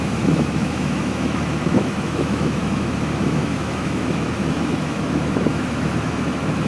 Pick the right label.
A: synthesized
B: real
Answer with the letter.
A